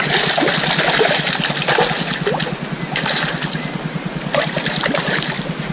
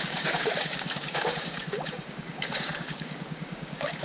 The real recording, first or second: first